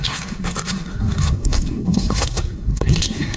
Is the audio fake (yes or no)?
yes